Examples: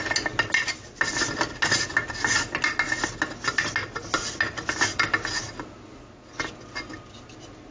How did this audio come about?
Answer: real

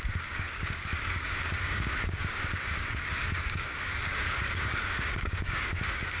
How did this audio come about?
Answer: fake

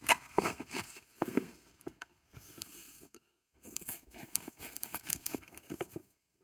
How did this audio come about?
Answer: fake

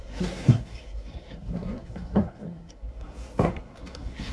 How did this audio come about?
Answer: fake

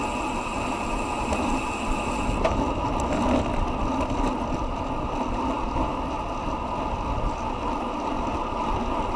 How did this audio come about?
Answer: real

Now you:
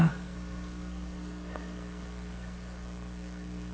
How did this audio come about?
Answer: fake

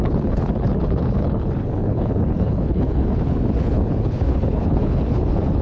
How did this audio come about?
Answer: fake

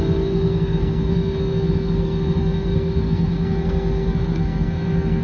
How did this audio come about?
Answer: fake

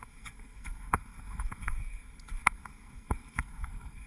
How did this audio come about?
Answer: fake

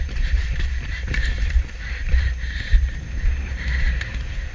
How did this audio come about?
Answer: fake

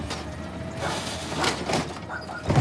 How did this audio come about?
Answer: real